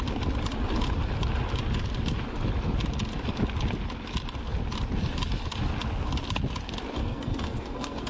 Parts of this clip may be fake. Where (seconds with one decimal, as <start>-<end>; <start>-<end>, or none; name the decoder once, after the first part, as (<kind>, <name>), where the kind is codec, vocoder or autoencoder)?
7.0-8.1 (codec, SNAC)